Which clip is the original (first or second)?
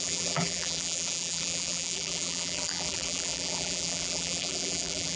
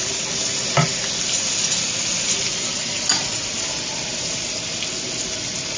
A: second